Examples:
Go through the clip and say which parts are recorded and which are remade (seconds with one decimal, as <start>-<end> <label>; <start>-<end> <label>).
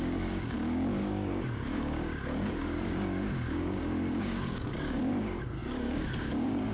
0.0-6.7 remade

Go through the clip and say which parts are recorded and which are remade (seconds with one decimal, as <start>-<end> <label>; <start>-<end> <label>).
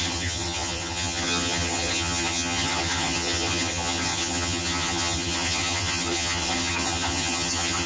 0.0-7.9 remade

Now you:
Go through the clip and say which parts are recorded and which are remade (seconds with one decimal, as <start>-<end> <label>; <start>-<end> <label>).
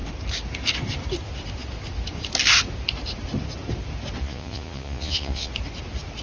0.0-4.2 recorded; 4.2-5.5 remade; 5.5-6.2 recorded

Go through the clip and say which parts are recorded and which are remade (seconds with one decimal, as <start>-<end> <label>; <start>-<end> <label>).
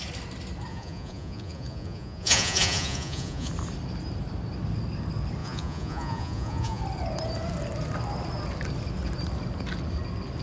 0.0-0.7 recorded; 0.7-3.5 remade; 3.5-5.4 recorded; 5.4-6.8 remade; 6.8-10.4 recorded